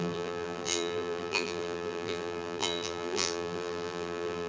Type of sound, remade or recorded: remade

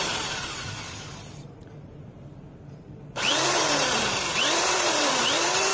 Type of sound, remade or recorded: remade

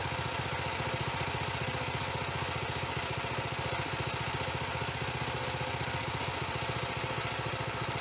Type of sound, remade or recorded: recorded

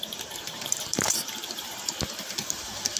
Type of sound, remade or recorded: remade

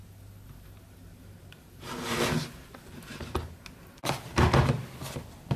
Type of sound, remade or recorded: recorded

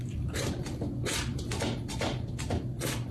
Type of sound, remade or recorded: recorded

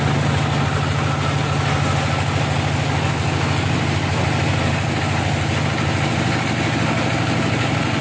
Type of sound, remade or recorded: recorded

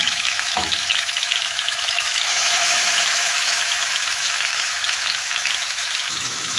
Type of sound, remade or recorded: remade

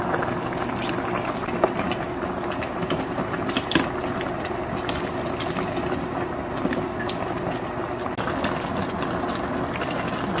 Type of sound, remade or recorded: recorded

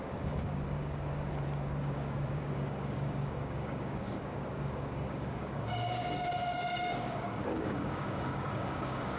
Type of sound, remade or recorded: remade